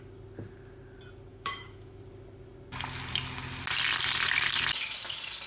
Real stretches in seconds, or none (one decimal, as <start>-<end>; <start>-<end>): 0.0-1.3; 2.0-5.5